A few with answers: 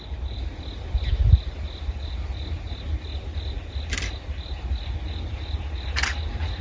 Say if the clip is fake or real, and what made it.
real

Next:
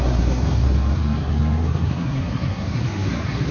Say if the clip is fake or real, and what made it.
fake, codec, SNAC